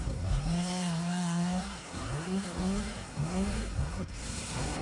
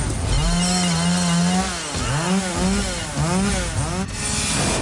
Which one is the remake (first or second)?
first